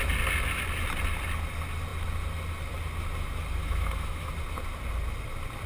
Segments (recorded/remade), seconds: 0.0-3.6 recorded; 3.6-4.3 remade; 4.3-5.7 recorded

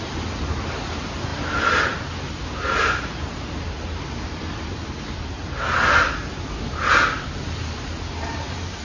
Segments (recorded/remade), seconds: 0.0-8.8 recorded

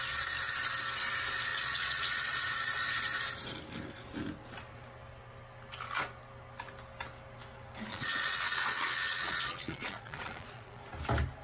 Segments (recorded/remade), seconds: 0.0-1.5 recorded; 1.5-2.4 remade; 2.4-7.9 recorded; 7.9-10.8 remade; 10.8-11.4 recorded

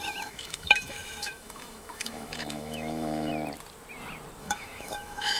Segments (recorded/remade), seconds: 0.0-3.3 remade; 3.3-4.4 recorded; 4.4-5.4 remade

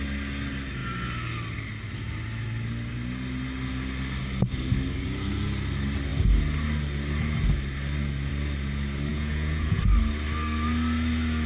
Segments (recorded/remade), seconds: 0.0-9.1 recorded; 9.1-9.8 remade; 9.8-11.5 recorded

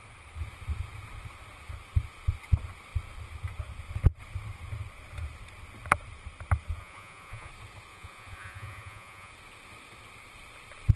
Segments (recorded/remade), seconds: 0.0-6.8 recorded; 6.8-7.5 remade; 7.5-7.9 recorded; 7.9-9.3 remade; 9.3-11.0 recorded

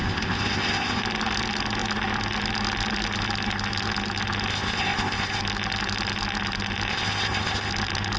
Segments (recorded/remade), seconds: 0.0-1.0 remade; 1.0-4.5 recorded; 4.5-5.4 remade; 5.4-6.9 recorded; 6.9-7.7 remade; 7.7-8.2 recorded

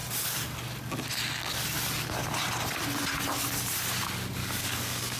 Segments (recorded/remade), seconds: 0.0-4.4 recorded; 4.4-5.2 remade